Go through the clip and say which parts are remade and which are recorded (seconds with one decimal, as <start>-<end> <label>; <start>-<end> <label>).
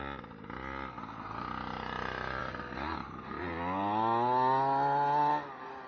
0.0-5.9 recorded